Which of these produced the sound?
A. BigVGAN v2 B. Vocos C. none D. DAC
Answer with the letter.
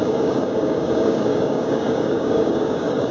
D